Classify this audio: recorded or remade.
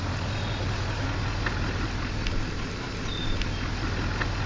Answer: recorded